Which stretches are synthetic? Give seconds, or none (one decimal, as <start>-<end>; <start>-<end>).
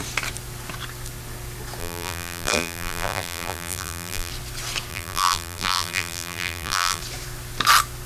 1.8-4.3; 4.9-7.0